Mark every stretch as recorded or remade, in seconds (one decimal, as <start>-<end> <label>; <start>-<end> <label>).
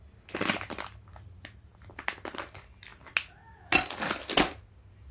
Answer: 0.0-5.1 recorded